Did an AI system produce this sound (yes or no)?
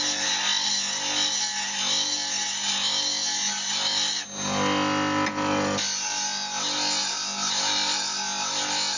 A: no